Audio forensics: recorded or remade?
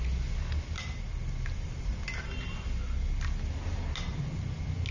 recorded